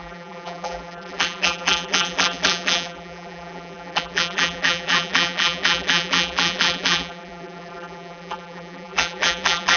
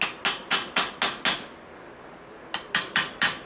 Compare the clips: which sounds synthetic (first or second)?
first